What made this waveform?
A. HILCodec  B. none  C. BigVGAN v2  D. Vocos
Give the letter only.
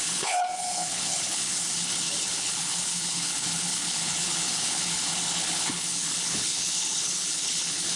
A